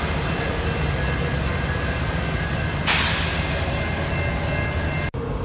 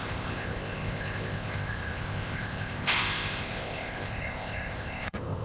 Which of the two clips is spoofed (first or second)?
second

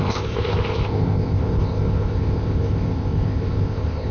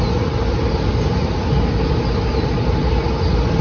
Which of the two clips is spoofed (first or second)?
first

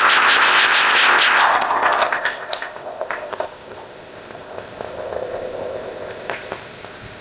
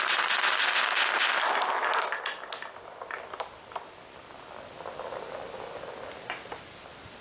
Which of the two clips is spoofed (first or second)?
first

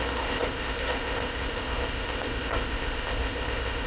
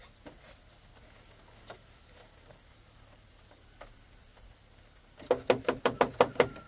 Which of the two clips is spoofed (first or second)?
first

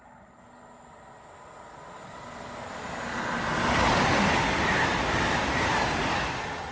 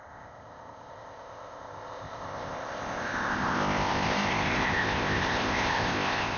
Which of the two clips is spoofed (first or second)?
second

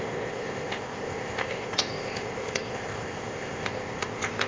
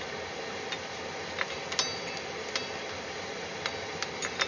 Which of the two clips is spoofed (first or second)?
first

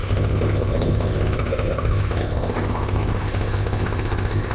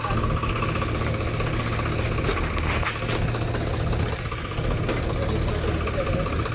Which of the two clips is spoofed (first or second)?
first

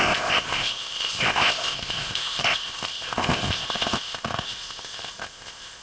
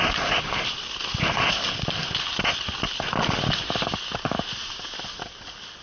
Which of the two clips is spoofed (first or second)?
first